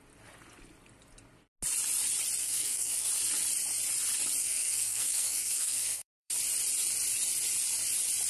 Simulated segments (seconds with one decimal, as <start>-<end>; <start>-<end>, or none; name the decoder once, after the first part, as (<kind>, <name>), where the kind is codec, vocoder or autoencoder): 2.4-3.1 (codec, SNAC); 4.4-6.3